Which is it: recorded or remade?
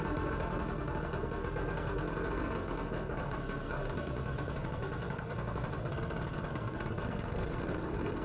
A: remade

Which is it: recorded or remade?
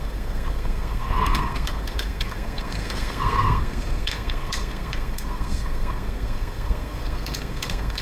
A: remade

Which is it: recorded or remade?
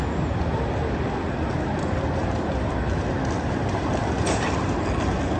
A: recorded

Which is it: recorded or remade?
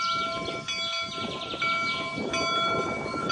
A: recorded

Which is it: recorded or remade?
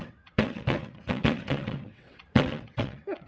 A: remade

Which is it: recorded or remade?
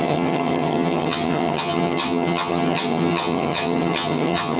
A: remade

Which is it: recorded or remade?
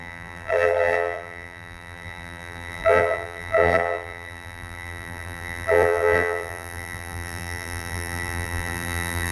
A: remade